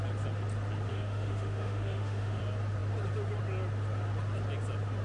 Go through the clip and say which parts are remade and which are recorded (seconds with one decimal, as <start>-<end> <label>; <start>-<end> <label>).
0.0-0.9 recorded; 0.9-2.4 remade; 2.4-5.0 recorded